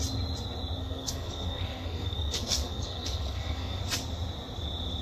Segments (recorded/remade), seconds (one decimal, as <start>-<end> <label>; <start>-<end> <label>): 0.0-0.8 recorded; 0.8-3.8 remade; 3.8-5.0 recorded